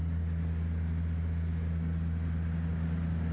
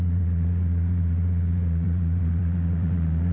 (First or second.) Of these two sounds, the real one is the first